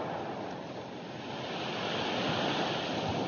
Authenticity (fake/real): real